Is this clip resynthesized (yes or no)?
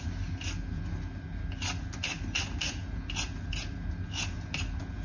no